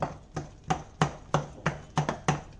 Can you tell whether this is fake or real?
real